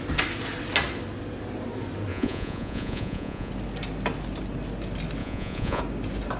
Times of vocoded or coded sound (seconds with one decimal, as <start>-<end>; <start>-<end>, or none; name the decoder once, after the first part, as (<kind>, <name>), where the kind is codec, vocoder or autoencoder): 2.1-3.5 (vocoder, Vocos); 5.2-5.8